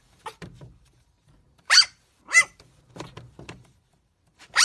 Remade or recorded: remade